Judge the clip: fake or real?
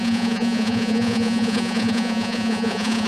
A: fake